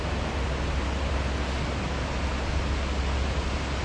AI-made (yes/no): no